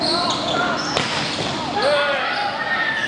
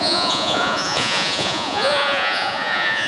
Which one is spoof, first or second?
second